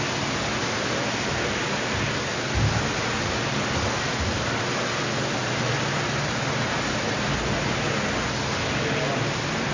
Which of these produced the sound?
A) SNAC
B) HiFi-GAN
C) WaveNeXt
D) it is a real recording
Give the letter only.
D